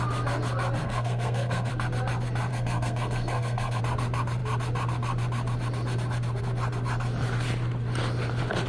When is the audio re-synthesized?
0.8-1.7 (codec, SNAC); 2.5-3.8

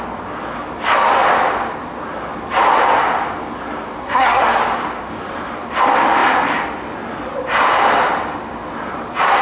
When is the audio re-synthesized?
4.0-4.6 (codec, SNAC)

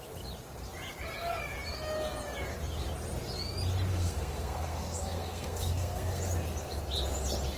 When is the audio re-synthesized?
3.9-6.2 (codec, SNAC)

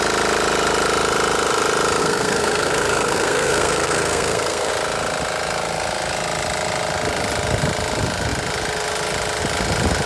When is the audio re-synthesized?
2.0-4.7 (codec, SNAC)

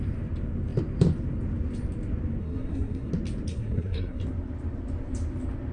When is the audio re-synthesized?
2.4-3.1 (codec, SNAC); 3.5-4.2

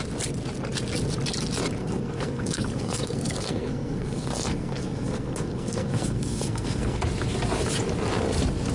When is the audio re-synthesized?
1.8-7.0 (codec, SNAC)